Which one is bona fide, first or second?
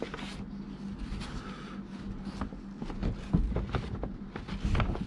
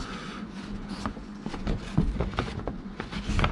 first